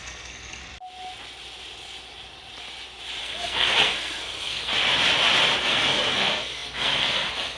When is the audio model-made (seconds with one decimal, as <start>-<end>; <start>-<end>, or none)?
0.0-0.6; 3.2-4.7; 5.6-7.6